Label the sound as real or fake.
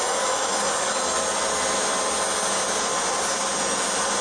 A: real